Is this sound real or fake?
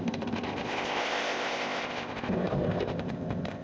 fake